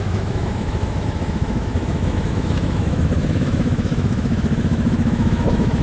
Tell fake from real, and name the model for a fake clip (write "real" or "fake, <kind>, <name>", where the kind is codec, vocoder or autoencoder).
fake, autoencoder, DAC-VAE